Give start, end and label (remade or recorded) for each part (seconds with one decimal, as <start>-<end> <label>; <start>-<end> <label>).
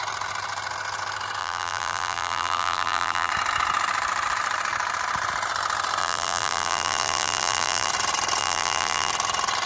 0.0-1.4 recorded; 1.4-3.3 remade; 3.3-6.0 recorded; 6.0-7.9 remade; 7.9-8.4 recorded; 8.4-9.1 remade; 9.1-9.7 recorded